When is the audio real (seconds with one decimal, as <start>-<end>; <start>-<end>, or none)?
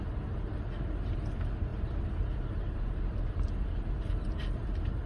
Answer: 0.0-1.7